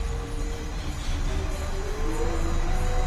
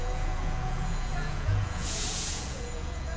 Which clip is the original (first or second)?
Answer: first